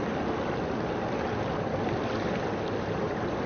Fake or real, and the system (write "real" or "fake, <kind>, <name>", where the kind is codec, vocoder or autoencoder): real